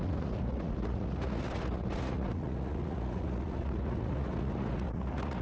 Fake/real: fake